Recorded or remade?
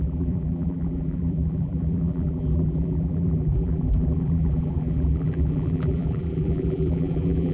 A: remade